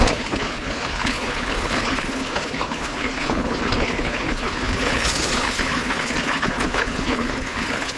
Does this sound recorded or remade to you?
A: remade